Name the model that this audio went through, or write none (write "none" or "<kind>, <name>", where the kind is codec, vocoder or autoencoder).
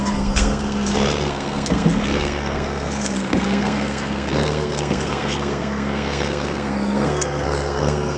codec, SNAC